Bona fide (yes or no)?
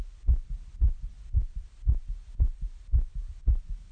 yes